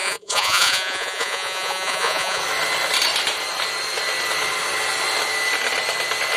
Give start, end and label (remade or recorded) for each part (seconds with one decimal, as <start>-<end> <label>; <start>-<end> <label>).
0.0-2.4 remade; 2.4-6.4 recorded